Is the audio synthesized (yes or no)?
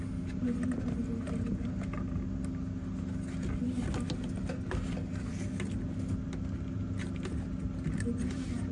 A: no